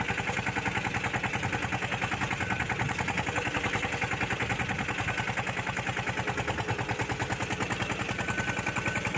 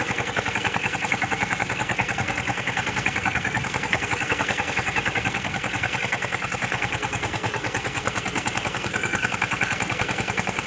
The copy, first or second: second